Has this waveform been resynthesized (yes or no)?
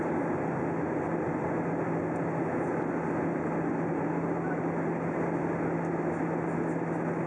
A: no